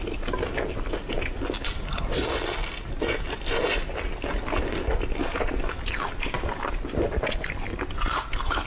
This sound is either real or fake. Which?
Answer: real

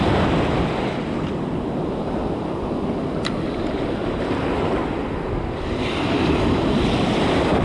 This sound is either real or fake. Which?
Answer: real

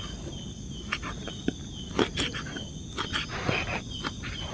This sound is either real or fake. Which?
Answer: real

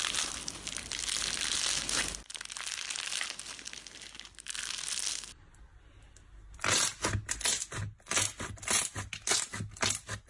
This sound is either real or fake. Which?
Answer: real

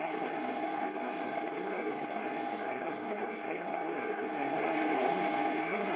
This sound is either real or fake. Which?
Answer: fake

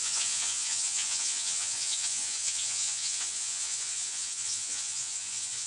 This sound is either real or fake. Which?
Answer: fake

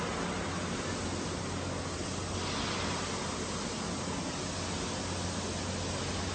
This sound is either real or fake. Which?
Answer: real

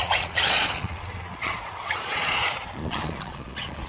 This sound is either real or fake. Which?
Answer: fake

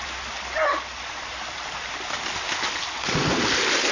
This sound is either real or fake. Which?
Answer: real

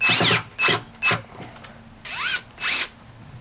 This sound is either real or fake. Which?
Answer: real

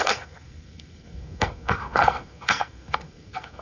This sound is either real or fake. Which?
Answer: fake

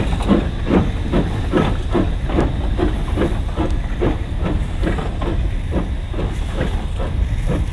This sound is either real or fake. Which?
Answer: real